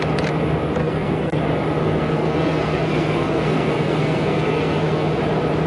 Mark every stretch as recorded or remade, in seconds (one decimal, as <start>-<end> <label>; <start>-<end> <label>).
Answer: 0.0-0.8 recorded; 0.8-1.4 remade; 1.4-1.8 recorded; 1.8-5.2 remade; 5.2-5.7 recorded